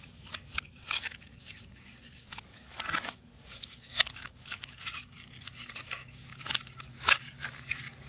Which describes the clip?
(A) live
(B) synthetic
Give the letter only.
B